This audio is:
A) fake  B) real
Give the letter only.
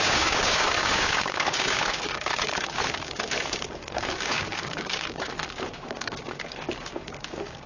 A